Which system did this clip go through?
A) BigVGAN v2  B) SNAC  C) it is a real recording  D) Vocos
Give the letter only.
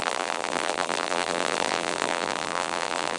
A